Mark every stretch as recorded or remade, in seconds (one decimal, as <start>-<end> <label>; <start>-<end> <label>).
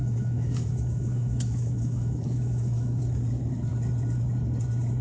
0.0-3.0 remade; 3.0-5.0 recorded